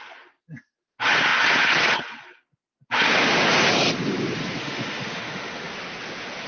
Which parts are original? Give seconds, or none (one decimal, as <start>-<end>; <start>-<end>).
0.0-4.6; 5.7-6.5